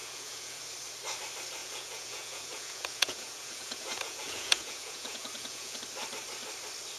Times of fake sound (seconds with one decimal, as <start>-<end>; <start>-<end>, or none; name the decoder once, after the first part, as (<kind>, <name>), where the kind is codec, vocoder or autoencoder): 0.0-0.6 (vocoder, Vocos); 1.6-5.8